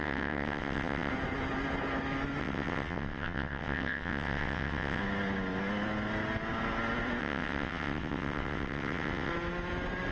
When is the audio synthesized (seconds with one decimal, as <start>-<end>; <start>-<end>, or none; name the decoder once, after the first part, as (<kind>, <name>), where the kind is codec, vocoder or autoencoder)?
0.0-1.1 (vocoder, WaveNeXt); 2.4-5.0; 7.2-9.3

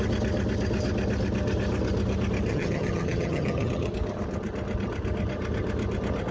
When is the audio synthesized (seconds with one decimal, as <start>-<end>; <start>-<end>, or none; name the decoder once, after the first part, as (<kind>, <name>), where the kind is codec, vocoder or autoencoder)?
2.5-3.9 (vocoder, HiFi-GAN)

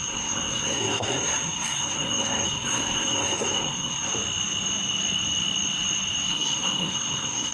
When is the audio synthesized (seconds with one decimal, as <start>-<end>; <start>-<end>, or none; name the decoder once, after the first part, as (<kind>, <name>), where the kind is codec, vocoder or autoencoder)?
0.0-4.1 (codec, SNAC); 6.3-7.5